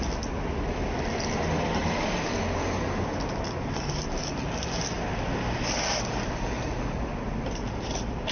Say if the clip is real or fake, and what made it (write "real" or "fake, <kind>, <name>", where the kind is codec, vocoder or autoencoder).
real